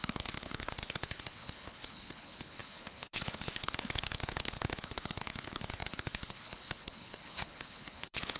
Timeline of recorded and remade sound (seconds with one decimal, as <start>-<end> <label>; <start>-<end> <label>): 0.0-8.4 remade